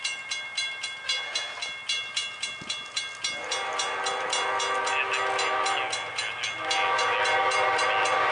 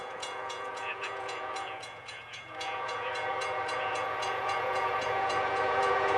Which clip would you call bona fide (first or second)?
first